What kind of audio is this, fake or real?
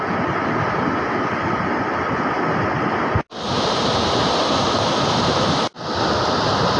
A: real